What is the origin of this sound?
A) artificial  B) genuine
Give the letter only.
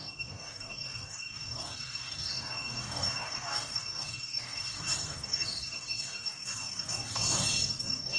A